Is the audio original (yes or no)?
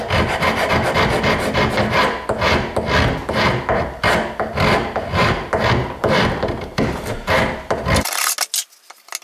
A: yes